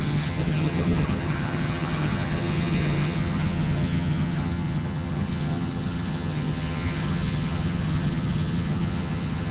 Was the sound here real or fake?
fake